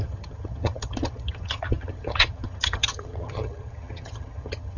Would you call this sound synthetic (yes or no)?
yes